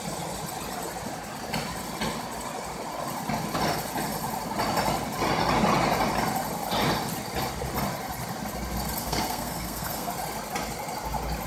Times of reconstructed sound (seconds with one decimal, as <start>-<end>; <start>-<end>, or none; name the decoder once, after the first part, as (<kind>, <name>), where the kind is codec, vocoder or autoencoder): 9.0-10.1 (codec, SNAC)